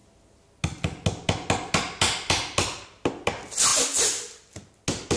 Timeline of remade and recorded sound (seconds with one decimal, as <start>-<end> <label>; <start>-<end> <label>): 0.0-5.2 recorded